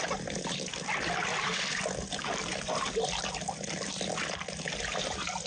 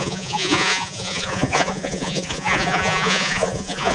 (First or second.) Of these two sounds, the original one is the first